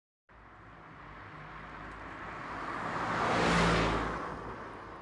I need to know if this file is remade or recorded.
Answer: recorded